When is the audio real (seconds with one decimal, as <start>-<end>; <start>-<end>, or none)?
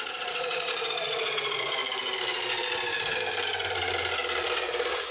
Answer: 1.8-5.1